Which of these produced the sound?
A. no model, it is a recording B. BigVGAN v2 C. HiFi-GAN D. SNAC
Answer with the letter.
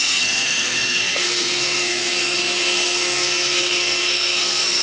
D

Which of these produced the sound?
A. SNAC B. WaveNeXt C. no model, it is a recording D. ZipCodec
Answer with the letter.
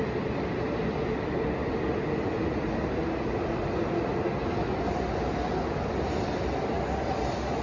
C